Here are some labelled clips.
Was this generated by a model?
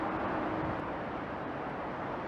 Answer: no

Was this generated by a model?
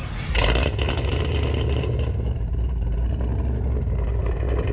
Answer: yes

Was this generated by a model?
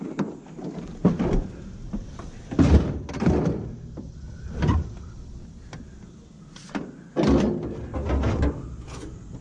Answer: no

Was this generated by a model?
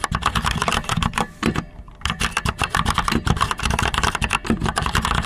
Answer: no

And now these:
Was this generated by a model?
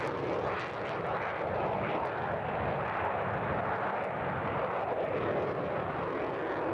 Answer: no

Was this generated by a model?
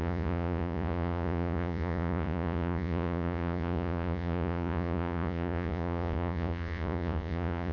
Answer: yes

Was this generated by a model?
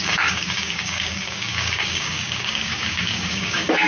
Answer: yes